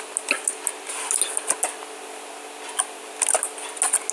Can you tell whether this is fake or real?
real